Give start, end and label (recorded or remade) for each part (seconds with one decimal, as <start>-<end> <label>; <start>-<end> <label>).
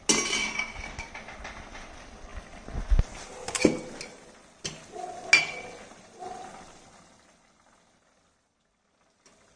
0.0-9.6 recorded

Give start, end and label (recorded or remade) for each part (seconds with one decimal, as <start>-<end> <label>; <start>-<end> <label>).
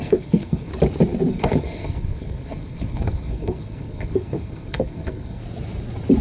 0.0-0.7 remade; 0.7-1.3 recorded; 1.3-5.4 remade; 5.4-6.2 recorded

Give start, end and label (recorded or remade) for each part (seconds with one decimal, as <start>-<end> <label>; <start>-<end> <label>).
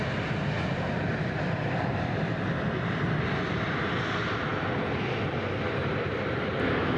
0.0-7.0 recorded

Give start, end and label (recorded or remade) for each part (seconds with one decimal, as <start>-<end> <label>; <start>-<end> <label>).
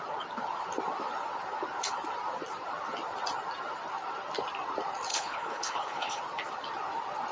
0.0-5.1 recorded; 5.1-6.2 remade; 6.2-7.3 recorded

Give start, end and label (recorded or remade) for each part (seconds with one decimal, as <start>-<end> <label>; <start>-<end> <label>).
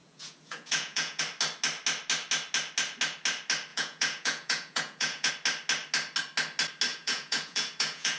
0.0-1.2 remade; 1.2-3.7 recorded; 3.7-5.3 remade; 5.3-6.9 recorded; 6.9-8.2 remade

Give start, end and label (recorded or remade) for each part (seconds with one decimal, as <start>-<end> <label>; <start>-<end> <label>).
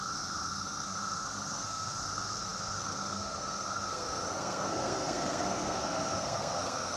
0.0-7.0 remade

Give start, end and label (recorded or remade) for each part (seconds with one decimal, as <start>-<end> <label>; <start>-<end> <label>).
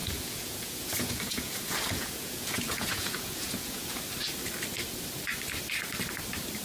0.0-4.0 remade; 4.0-6.6 recorded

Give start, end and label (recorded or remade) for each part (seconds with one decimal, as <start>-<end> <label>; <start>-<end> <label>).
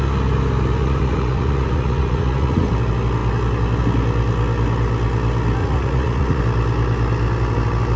0.0-0.8 recorded; 0.8-2.7 remade; 2.7-5.6 recorded; 5.6-6.4 remade; 6.4-8.0 recorded